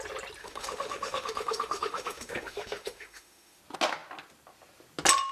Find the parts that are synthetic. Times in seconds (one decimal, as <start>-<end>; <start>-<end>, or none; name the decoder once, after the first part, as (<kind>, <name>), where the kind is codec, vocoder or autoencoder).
0.4-3.6 (autoencoder, DAC-VAE)